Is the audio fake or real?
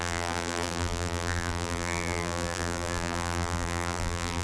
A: fake